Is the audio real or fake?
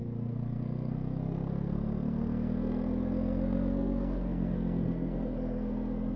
fake